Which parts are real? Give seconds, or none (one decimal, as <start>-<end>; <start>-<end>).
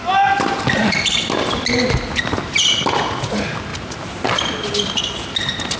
0.0-5.8